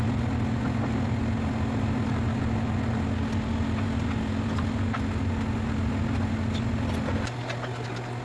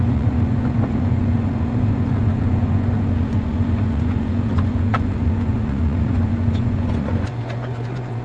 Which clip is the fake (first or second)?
second